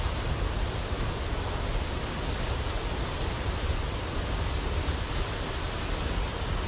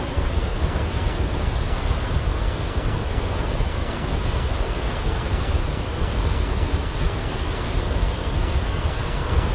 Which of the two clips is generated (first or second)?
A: second